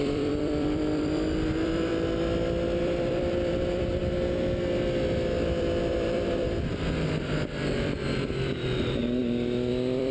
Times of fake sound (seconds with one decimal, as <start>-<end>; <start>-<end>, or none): 0.0-1.9; 2.8-4.0; 5.6-10.1